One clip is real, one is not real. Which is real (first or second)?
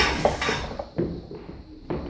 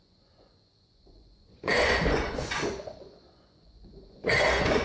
first